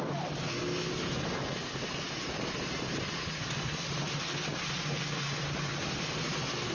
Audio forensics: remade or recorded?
recorded